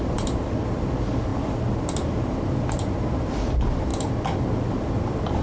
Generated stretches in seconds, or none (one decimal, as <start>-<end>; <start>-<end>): 0.0-1.3; 2.5-3.9; 4.9-5.4